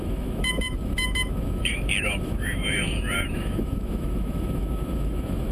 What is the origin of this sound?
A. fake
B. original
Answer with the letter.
A